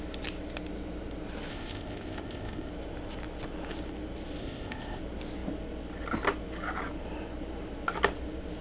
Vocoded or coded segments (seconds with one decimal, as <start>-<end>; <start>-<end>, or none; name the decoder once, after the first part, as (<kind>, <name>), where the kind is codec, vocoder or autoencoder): 1.5-2.7 (codec, ZipCodec); 4.4-5.0